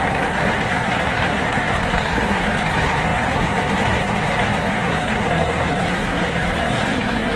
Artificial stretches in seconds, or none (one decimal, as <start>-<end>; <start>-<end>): 0.0-7.4